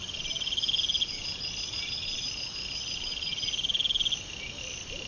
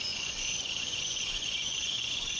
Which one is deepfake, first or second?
second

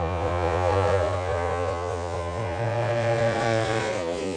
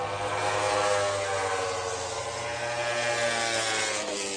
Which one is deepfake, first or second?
first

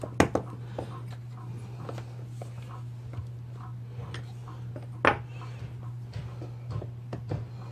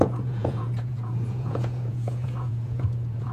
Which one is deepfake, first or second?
second